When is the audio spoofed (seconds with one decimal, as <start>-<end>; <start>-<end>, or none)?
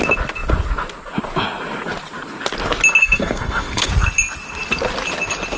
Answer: 3.0-3.9